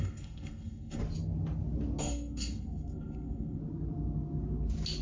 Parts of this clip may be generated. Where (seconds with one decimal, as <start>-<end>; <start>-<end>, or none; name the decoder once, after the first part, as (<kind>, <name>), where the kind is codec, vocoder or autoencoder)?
0.0-1.0 (codec, SNAC); 2.0-3.6